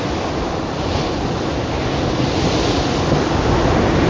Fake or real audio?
real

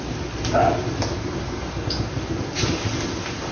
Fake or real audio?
real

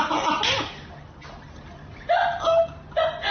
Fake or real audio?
real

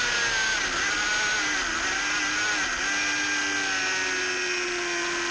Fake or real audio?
real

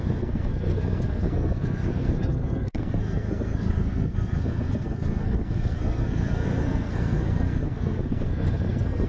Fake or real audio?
fake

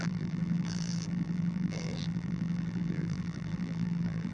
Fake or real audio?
fake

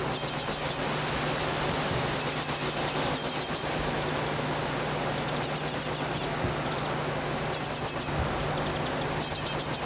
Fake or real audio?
real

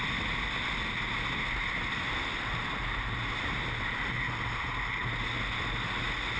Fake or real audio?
real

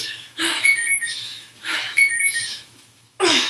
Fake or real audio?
fake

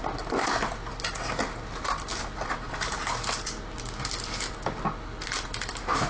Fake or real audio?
real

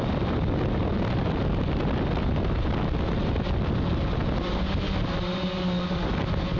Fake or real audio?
real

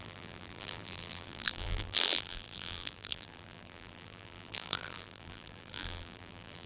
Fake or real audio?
fake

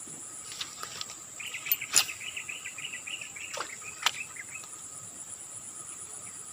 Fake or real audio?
real